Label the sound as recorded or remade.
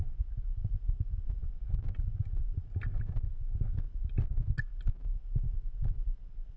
recorded